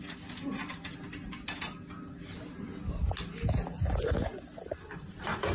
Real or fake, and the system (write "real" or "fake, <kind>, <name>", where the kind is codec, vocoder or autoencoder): real